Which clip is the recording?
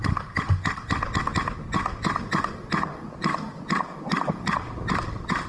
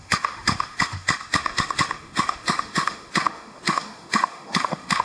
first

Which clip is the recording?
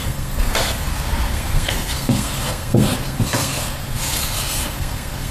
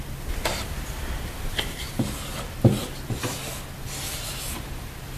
second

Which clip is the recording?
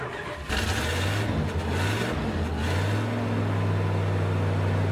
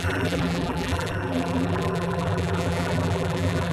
first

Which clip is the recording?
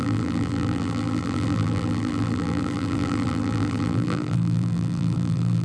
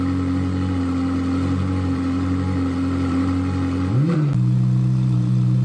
second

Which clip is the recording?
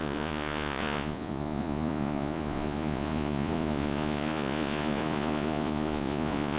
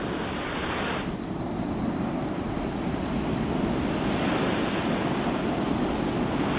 second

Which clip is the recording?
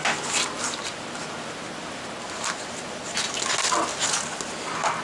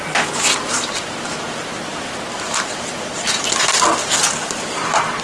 first